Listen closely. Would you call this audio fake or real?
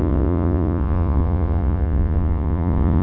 fake